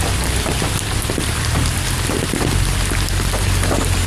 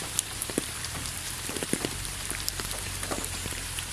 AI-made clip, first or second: second